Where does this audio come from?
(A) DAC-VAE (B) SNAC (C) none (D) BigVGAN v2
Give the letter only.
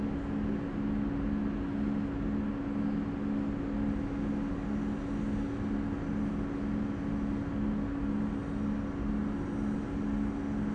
C